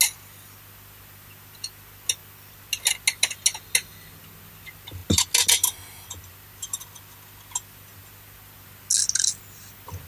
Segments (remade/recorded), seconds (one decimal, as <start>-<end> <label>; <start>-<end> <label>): 0.0-10.1 recorded